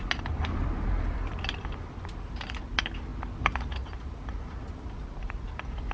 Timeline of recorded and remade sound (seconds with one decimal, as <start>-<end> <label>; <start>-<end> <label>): 0.0-5.9 recorded